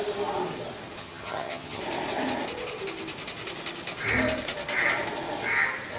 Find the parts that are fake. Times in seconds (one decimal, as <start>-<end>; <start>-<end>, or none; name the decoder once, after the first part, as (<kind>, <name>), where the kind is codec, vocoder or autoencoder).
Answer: 1.0-1.8 (vocoder, HiFi-GAN)